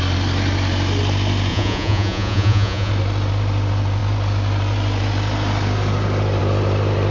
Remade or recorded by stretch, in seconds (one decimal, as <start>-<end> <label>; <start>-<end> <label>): 0.0-1.5 recorded; 1.5-2.9 remade; 2.9-7.1 recorded